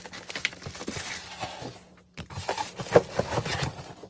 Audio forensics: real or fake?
real